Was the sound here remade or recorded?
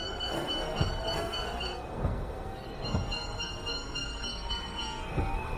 remade